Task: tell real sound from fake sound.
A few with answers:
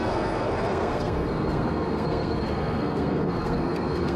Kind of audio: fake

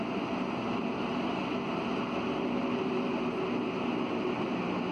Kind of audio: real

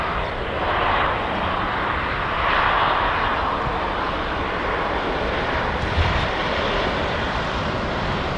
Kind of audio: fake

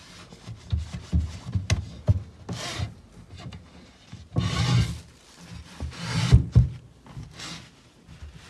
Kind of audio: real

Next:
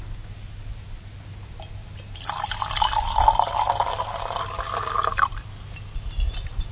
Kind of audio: real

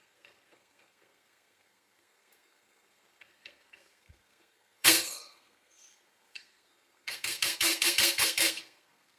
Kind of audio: fake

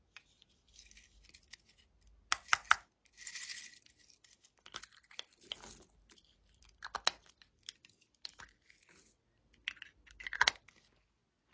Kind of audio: real